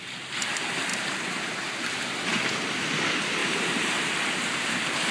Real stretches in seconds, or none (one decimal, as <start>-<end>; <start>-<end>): 0.0-0.9; 2.0-3.4